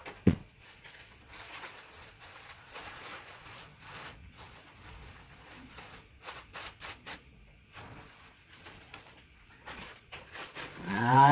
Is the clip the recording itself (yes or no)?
no